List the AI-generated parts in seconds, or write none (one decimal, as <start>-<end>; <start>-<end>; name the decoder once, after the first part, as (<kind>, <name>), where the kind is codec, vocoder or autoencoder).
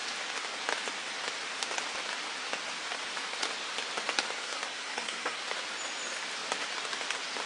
4.4-5.4 (codec, SNAC)